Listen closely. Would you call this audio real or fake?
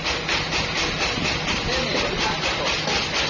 real